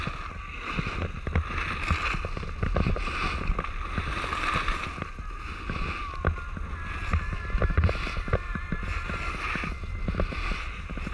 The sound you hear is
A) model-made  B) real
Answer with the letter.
B